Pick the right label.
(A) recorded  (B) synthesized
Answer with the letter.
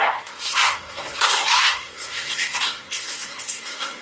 B